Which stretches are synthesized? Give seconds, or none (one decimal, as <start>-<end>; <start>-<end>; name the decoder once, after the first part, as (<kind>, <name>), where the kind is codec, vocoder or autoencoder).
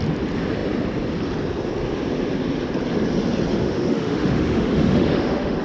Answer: 3.6-5.6 (autoencoder, DAC-VAE)